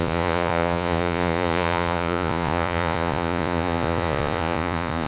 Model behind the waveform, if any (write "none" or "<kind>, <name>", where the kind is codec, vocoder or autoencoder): vocoder, Vocos